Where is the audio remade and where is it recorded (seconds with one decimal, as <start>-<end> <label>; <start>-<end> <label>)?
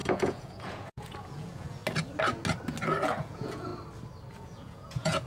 0.0-1.8 remade; 1.8-3.2 recorded; 3.2-3.7 remade; 3.7-4.3 recorded; 4.3-5.3 remade